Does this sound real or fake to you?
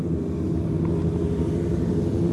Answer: real